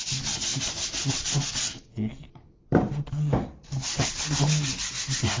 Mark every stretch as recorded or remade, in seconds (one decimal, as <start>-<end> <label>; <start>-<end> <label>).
0.0-5.4 recorded